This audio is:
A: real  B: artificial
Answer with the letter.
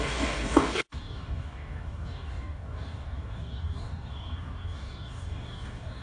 B